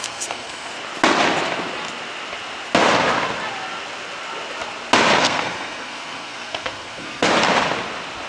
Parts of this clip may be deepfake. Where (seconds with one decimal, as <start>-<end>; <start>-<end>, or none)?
0.0-0.7; 5.2-7.3